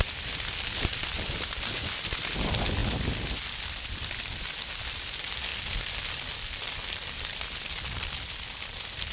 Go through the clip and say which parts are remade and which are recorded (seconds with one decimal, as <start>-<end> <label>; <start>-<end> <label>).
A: 0.0-9.1 recorded